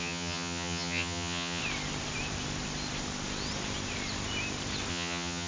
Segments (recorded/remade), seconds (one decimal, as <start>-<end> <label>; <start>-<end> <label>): 0.0-1.6 remade; 1.6-4.9 recorded; 4.9-5.5 remade

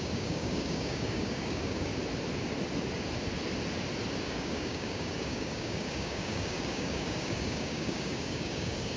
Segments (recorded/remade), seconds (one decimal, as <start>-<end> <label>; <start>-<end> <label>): 0.0-1.9 remade; 1.9-4.2 recorded; 4.2-9.0 remade

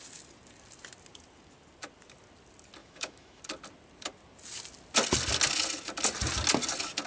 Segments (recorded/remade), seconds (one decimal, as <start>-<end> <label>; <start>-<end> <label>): 0.0-2.8 recorded; 2.8-3.4 remade; 3.4-7.1 recorded

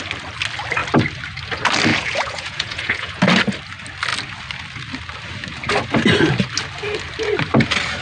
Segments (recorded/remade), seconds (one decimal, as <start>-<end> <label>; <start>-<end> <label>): 0.0-1.9 recorded; 1.9-3.2 remade; 3.2-8.0 recorded

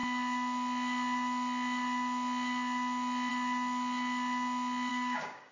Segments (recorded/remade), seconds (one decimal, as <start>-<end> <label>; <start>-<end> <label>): 0.0-4.9 recorded; 4.9-5.5 remade

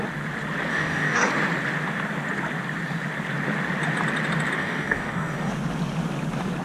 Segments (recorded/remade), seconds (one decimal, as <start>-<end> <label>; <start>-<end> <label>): 0.0-0.7 recorded; 0.7-1.3 remade; 1.3-4.6 recorded; 4.6-5.5 remade; 5.5-6.6 recorded